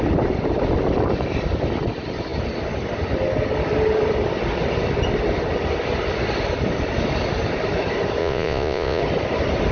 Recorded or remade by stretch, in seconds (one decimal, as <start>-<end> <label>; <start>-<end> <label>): 0.0-8.2 recorded; 8.2-9.0 remade; 9.0-9.7 recorded